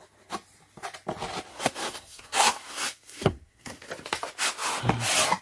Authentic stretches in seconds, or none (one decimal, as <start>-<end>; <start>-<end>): 0.0-1.5; 3.9-5.4